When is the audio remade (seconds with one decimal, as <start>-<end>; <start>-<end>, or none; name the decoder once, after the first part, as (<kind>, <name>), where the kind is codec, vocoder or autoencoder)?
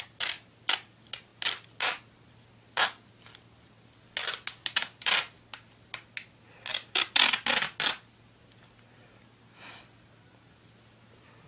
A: none